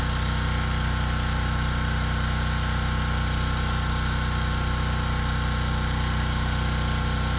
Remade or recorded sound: recorded